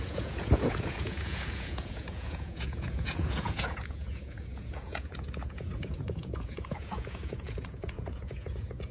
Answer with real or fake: fake